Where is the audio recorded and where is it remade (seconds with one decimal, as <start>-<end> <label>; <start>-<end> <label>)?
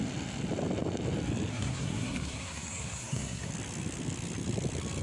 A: 0.0-1.5 recorded; 1.5-3.5 remade; 3.5-5.0 recorded